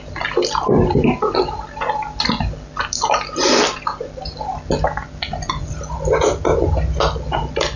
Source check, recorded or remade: recorded